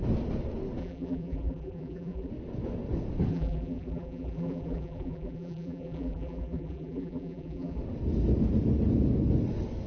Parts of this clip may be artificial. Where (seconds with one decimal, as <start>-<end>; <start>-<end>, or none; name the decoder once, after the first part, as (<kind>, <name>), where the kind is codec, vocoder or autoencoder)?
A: 0.8-2.3 (vocoder, BigVGAN v2); 3.3-7.8